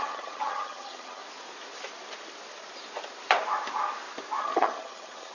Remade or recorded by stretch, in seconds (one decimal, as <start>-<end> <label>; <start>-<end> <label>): 0.0-1.2 remade; 1.2-4.4 recorded; 4.4-5.3 remade